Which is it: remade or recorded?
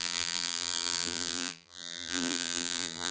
remade